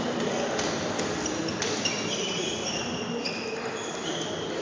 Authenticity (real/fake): real